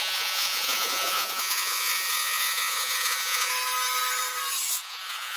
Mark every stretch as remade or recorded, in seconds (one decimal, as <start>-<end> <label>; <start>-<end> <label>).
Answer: 0.0-3.5 remade; 3.5-4.7 recorded; 4.7-5.4 remade